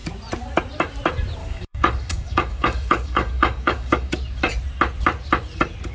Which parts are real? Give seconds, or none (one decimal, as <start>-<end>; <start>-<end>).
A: 0.0-1.4; 4.1-5.9